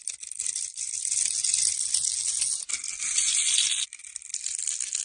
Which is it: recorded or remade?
recorded